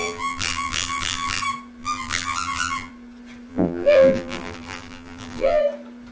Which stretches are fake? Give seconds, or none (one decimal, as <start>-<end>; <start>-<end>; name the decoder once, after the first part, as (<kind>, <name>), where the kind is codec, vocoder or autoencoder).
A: 0.0-1.4 (vocoder, BigVGAN v2); 1.8-2.9; 3.5-5.6